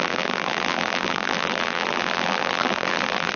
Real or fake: fake